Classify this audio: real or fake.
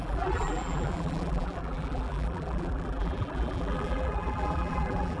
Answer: fake